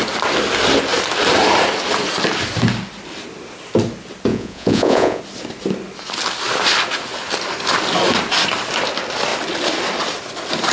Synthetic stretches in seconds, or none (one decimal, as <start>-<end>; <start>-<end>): 4.3-5.2